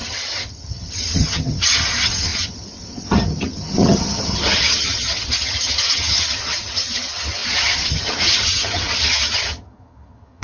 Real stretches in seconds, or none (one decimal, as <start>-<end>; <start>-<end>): none